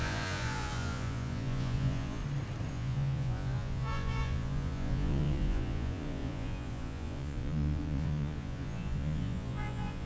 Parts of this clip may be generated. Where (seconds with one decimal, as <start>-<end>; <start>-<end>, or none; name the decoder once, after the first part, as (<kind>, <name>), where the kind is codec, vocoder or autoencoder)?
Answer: 0.0-2.2 (vocoder, Vocos); 2.7-10.1